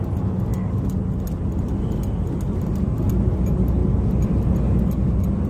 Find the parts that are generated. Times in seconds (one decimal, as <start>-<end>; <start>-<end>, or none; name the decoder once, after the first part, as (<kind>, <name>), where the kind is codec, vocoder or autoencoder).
none

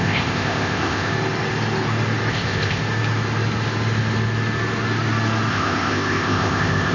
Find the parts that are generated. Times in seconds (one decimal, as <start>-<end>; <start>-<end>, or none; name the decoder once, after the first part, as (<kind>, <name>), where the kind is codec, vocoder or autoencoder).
0.0-1.1 (codec, ZipCodec); 2.3-2.8; 5.5-6.9

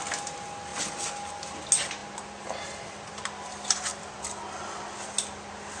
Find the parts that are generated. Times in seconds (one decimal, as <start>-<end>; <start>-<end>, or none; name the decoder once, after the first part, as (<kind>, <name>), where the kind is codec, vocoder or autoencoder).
none

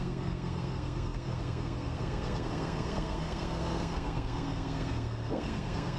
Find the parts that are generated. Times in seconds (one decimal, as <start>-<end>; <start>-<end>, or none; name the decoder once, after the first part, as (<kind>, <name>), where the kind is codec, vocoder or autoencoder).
0.0-6.0 (codec, SNAC)

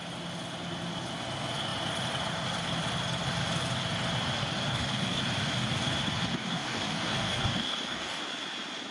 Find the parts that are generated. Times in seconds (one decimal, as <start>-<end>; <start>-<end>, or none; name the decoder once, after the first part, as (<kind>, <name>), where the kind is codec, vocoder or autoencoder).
4.7-5.2 (codec, DAC); 6.3-8.2